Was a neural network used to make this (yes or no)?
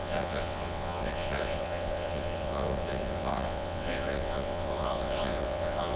yes